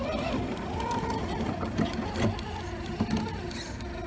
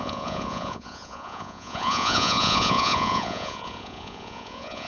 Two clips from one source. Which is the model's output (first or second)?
second